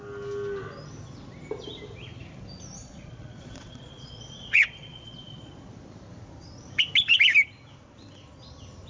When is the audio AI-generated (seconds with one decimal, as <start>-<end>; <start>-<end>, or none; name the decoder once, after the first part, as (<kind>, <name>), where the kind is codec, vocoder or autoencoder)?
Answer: 2.8-5.5 (vocoder, Vocos)